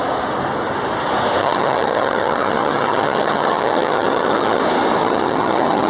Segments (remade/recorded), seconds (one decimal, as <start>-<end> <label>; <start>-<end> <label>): 0.0-1.4 recorded; 1.4-4.6 remade; 4.6-5.0 recorded; 5.0-5.9 remade